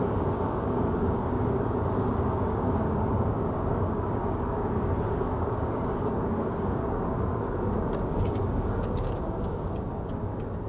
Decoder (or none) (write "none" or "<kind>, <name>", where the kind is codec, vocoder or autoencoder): codec, DAC